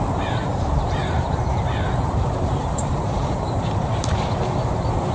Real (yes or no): no